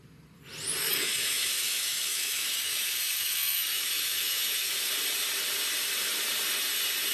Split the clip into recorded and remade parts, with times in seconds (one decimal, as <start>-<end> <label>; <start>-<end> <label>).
0.0-0.8 recorded; 0.8-4.7 remade; 4.7-7.1 recorded